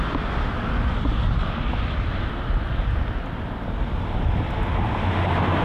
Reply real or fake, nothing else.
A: real